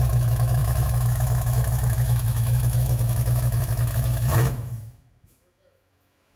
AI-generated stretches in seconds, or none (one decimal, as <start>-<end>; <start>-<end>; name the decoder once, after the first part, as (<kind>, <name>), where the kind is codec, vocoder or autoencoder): 0.0-6.4 (autoencoder, DAC-VAE)